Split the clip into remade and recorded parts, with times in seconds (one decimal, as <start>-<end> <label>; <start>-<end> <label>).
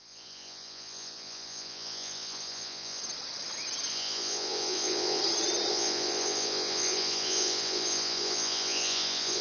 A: 0.0-3.0 remade; 3.0-3.9 recorded; 3.9-5.2 remade; 5.2-5.7 recorded; 5.7-9.4 remade